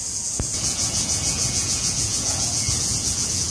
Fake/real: fake